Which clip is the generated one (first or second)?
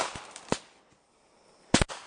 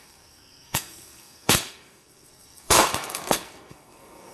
second